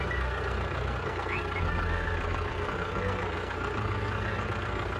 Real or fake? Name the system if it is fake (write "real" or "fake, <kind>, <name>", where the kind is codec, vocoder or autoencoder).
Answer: fake, codec, SNAC